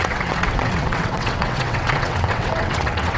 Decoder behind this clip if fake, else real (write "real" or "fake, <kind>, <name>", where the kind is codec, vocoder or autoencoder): fake, vocoder, WaveNeXt